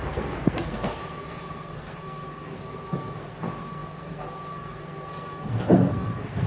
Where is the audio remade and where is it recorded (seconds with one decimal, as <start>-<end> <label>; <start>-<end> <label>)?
0.0-6.5 remade